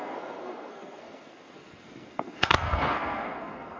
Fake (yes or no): yes